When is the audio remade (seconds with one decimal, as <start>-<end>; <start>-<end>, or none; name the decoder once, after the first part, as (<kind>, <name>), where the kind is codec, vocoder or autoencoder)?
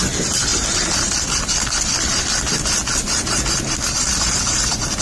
none